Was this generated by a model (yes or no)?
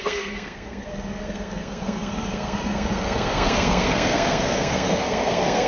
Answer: yes